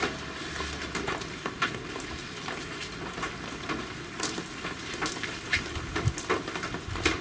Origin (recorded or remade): recorded